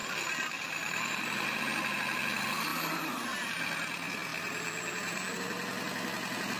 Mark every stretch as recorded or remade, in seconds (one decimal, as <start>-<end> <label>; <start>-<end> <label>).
0.0-1.6 remade; 1.6-2.7 recorded; 2.7-3.5 remade; 3.5-4.3 recorded; 4.3-5.4 remade; 5.4-6.6 recorded